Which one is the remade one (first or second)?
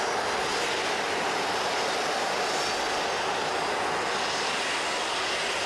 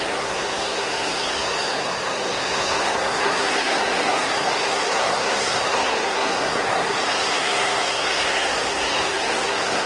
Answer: second